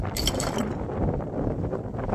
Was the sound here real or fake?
real